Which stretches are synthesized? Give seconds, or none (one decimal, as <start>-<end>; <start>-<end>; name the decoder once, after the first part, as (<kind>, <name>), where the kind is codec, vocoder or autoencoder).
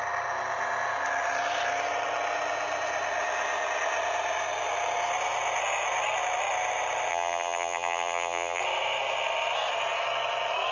7.1-8.6 (vocoder, BigVGAN v2)